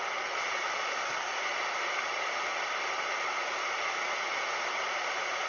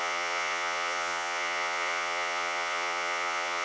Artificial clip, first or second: second